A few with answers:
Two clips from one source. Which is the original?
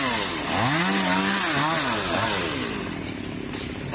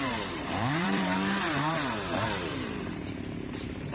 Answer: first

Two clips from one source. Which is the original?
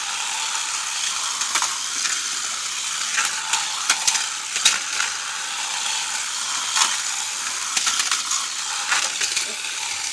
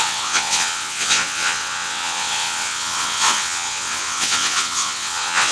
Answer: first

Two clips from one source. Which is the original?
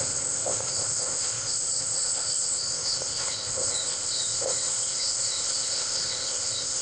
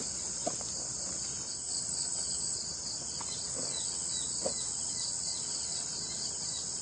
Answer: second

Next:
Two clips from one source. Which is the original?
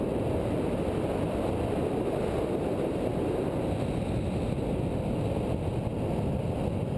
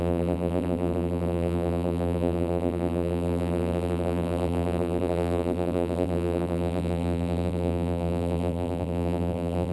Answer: first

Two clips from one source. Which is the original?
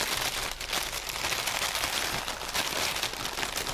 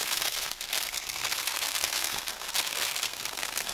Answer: first